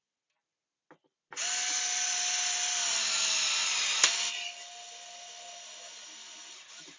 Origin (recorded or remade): recorded